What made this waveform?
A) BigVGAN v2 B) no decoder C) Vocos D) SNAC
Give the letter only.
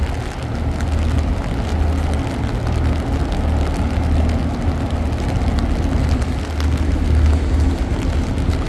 B